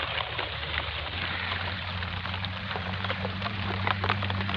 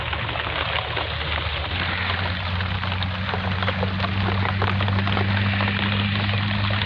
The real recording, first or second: second